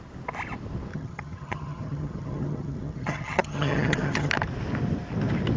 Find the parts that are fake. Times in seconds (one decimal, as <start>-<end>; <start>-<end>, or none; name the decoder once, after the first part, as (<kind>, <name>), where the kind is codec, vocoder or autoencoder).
0.9-4.3 (vocoder, HiFi-GAN)